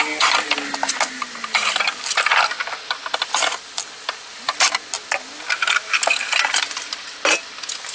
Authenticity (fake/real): real